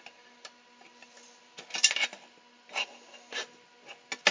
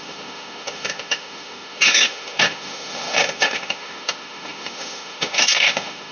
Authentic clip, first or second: first